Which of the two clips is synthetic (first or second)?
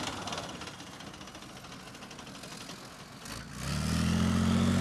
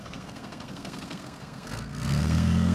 second